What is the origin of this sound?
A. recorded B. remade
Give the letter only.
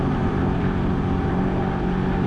B